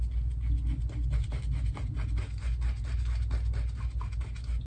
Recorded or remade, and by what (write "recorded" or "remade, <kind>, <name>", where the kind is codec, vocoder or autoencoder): recorded